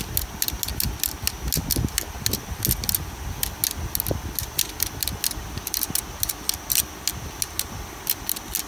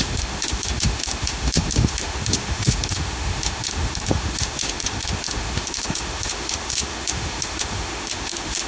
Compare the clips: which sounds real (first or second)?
first